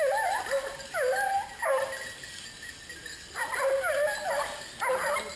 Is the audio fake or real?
real